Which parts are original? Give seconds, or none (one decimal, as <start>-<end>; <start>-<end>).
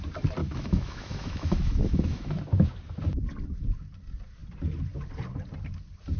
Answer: 0.0-0.4; 2.4-6.2